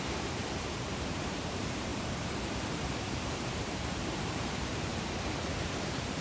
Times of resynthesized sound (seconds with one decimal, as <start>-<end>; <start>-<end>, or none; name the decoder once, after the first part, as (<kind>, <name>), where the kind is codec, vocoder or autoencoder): 0.0-4.9 (vocoder, BigVGAN v2); 5.5-6.2